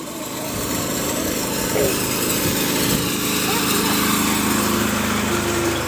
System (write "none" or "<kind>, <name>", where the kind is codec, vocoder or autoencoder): none